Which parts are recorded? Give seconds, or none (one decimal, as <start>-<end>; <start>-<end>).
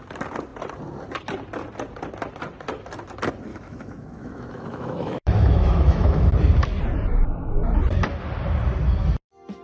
0.0-3.5; 6.3-9.6